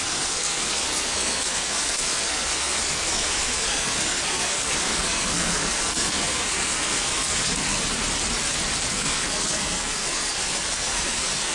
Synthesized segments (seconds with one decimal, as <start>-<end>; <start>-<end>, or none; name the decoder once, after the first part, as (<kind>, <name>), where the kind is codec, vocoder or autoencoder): 0.0-7.8 (codec, SNAC); 8.9-11.5